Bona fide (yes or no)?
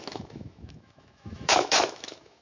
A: no